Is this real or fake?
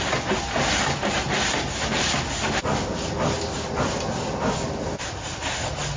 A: real